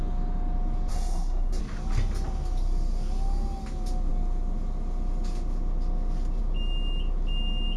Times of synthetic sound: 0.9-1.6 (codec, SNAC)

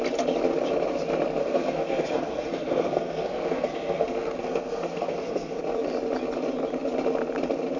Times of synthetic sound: 1.4-5.6 (codec, SNAC)

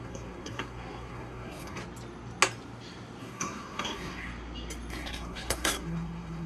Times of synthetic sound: 0.0-1.8 (codec, SNAC); 3.2-4.3; 4.9-6.5

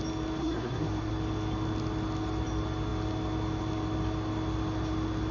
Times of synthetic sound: 0.4-1.1 (codec, SNAC)

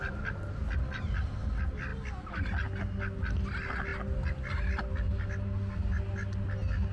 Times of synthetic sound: none